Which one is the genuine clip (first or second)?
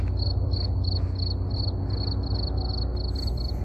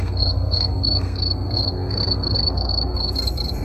first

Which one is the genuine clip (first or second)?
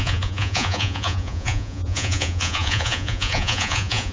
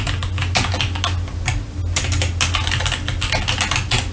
second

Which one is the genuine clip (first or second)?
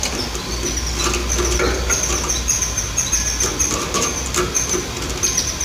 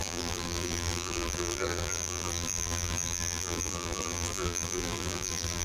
first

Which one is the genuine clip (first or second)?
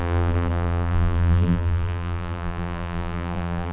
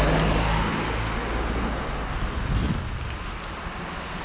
second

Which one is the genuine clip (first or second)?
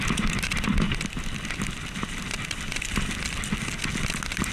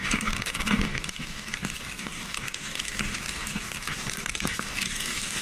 first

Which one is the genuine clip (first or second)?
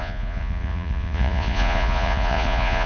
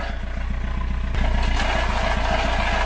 second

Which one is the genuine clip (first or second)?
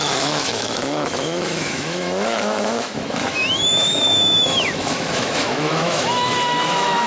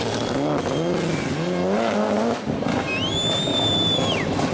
second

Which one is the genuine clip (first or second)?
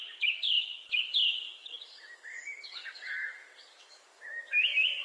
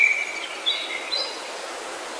second